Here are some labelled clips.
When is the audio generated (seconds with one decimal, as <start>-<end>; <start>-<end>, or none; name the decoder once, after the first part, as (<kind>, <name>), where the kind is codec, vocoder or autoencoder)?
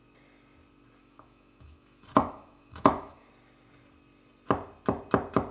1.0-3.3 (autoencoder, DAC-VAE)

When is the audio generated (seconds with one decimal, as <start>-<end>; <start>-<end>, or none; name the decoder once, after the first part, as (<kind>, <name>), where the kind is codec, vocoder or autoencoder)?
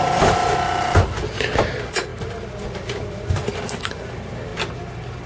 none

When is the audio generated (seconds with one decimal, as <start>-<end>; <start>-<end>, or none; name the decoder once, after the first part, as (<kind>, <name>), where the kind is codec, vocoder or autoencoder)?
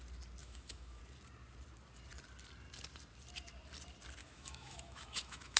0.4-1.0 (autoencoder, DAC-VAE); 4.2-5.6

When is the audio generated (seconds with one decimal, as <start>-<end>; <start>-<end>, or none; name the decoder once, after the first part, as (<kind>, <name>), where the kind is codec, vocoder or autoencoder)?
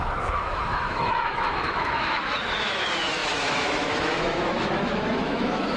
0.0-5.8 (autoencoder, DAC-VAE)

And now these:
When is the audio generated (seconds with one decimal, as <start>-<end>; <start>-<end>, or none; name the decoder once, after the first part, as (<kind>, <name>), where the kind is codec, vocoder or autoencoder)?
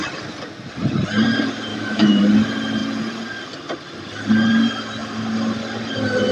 1.7-2.2 (autoencoder, DAC-VAE)